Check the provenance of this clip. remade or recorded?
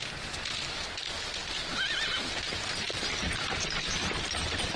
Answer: recorded